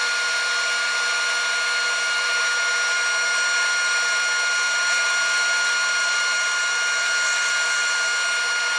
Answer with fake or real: real